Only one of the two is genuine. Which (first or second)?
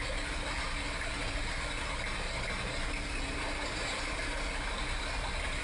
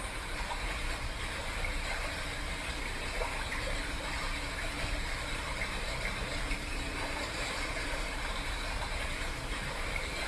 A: first